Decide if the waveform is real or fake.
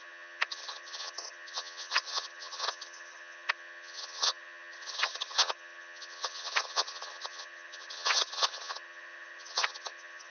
fake